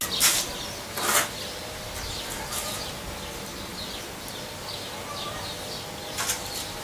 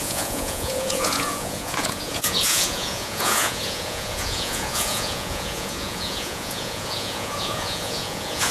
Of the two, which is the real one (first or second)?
first